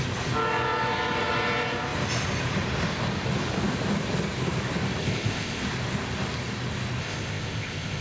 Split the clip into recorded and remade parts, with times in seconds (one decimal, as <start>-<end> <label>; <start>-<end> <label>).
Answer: 0.0-5.0 recorded; 5.0-5.6 remade; 5.6-7.0 recorded; 7.0-8.0 remade